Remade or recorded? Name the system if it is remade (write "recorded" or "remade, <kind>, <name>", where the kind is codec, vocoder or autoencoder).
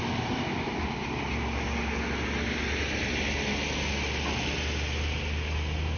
recorded